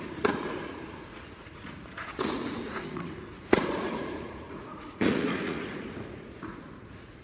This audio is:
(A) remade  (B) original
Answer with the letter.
A